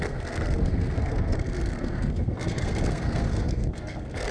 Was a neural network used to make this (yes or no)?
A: yes